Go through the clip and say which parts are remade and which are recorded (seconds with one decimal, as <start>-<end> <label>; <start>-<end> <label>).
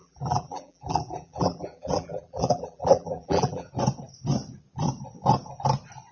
0.0-3.7 remade; 3.7-6.1 recorded